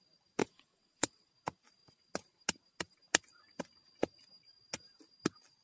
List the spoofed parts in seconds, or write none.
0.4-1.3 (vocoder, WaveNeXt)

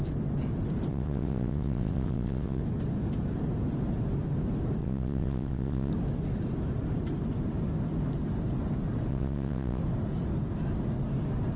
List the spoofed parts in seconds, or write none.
0.9-2.6 (vocoder, WaveNeXt); 4.8-5.9; 9.1-9.8

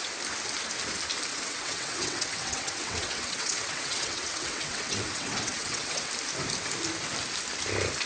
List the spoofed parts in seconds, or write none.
1.3-6.1 (vocoder, WaveNeXt)

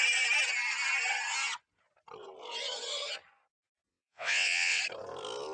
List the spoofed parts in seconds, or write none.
3.9-4.8 (vocoder, WaveNeXt)

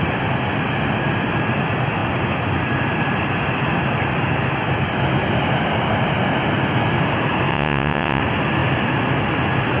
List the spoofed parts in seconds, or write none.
7.5-8.2 (vocoder, WaveNeXt)

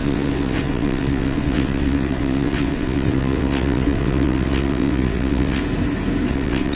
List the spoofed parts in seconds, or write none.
0.0-5.6 (vocoder, WaveNeXt); 6.3-6.8

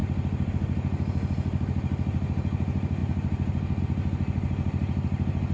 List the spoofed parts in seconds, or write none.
none